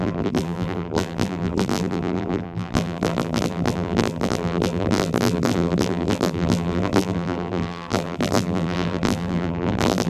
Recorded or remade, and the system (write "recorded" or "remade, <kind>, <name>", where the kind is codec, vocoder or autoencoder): remade, vocoder, BigVGAN v2